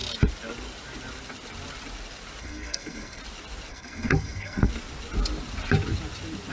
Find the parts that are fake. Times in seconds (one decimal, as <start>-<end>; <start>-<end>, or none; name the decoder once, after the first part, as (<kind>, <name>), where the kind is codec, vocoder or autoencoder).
2.4-3.2 (codec, SNAC); 3.7-4.7